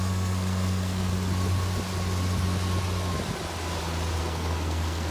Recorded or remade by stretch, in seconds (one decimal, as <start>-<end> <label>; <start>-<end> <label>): 0.0-1.1 remade; 1.1-4.2 recorded; 4.2-5.1 remade